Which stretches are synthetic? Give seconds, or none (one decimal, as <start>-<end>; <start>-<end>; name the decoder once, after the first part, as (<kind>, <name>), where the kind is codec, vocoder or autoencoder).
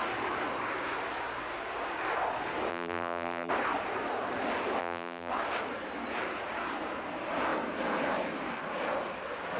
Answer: 2.7-3.5 (vocoder, BigVGAN v2); 4.8-5.3